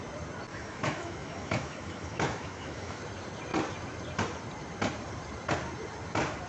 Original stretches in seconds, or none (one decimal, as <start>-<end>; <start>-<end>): 0.0-0.5; 3.0-6.5